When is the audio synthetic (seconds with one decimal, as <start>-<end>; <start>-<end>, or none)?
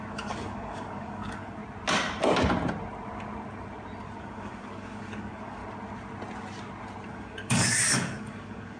0.0-1.6; 4.2-5.6; 7.1-8.8